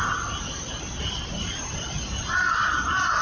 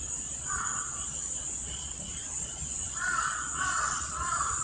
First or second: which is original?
first